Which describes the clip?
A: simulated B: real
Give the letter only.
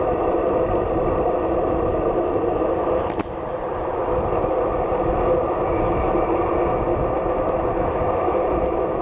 B